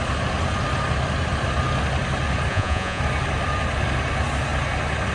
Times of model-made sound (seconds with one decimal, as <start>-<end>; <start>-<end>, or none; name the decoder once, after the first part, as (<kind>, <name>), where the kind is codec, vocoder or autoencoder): 2.5-3.0 (vocoder, Vocos)